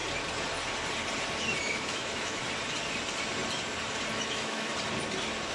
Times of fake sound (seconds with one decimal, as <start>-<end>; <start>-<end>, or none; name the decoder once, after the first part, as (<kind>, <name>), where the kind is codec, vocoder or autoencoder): 1.6-2.4 (autoencoder, DAC-VAE); 4.1-4.7